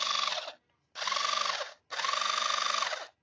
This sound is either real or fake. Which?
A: real